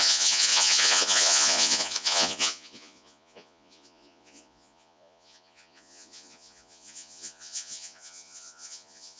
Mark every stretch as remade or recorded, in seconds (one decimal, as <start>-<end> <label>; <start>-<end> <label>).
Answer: 0.0-9.2 remade